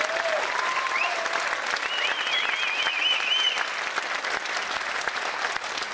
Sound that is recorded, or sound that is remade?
recorded